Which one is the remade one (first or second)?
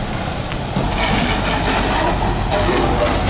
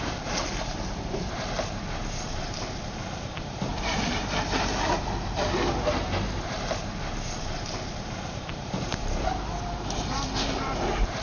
second